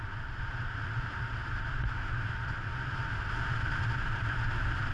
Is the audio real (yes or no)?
yes